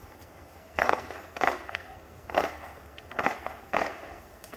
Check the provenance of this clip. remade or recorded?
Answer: remade